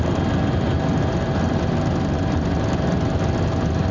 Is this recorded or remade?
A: recorded